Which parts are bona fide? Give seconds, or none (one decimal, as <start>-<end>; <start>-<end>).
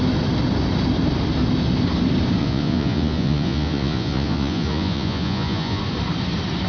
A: 0.0-2.4; 5.8-6.7